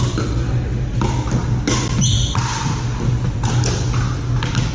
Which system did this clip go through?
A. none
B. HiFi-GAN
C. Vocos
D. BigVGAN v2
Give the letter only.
A